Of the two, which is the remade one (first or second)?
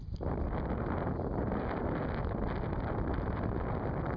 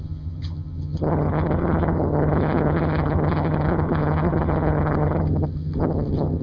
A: second